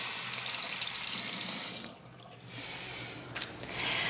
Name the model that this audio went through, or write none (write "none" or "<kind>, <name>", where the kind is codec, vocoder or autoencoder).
none